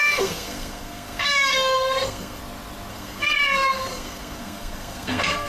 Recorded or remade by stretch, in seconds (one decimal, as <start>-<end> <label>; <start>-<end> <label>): 0.0-2.4 remade; 2.4-2.9 recorded; 2.9-5.5 remade